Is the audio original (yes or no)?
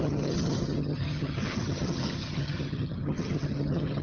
no